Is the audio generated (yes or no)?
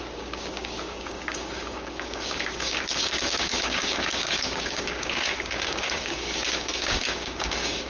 yes